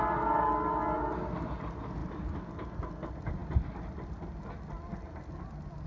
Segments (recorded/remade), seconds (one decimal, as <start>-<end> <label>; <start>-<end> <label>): 0.0-5.9 recorded